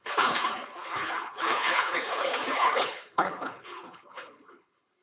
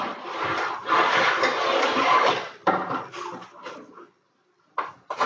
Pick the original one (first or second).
second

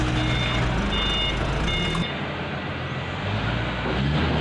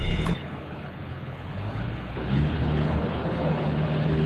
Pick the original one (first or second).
first